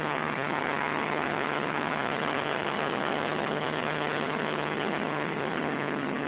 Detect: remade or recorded remade